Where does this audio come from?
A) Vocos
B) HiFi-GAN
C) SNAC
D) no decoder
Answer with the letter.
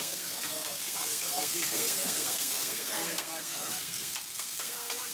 C